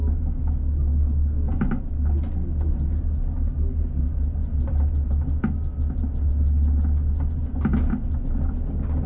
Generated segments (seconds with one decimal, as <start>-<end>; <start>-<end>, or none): none